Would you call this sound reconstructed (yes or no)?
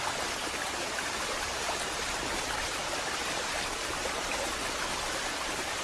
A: no